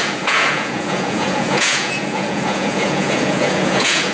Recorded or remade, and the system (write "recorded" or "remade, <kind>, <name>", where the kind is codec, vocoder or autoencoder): remade, vocoder, Vocos